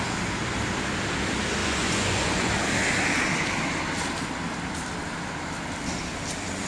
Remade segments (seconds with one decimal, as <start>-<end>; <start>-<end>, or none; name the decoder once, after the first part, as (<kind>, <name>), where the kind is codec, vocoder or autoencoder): 1.6-2.5 (vocoder, Vocos)